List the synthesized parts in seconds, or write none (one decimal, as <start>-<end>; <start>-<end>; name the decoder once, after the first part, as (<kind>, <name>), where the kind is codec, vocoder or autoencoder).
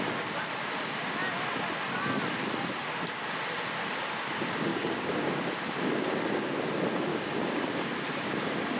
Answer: 4.7-5.4 (codec, DAC); 7.1-7.7